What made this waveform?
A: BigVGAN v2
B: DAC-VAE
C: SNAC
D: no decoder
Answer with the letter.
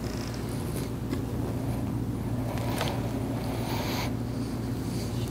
D